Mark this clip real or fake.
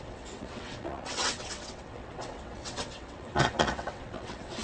fake